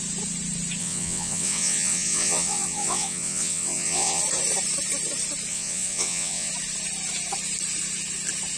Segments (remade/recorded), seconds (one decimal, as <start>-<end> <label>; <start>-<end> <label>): 0.0-0.8 recorded; 0.8-4.2 remade; 4.2-5.5 recorded; 5.5-6.5 remade; 6.5-8.6 recorded